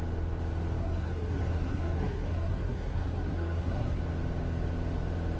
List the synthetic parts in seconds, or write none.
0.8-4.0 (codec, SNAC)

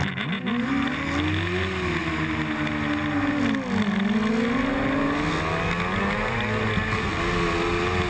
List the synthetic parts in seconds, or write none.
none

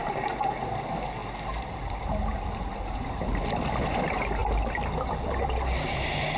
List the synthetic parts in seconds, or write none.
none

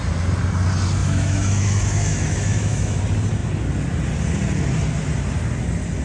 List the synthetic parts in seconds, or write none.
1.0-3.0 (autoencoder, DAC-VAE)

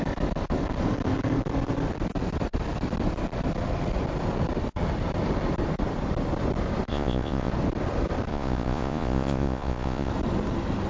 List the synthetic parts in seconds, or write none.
6.9-7.5 (vocoder, Vocos); 8.3-10.1

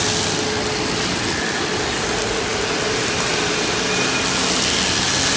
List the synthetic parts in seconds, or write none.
none

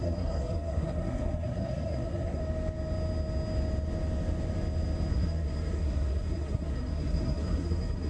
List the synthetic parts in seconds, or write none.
0.0-2.4 (codec, SNAC); 5.1-8.1

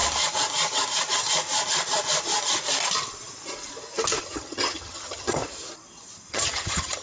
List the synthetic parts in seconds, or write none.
4.2-5.4 (vocoder, HiFi-GAN); 6.3-7.0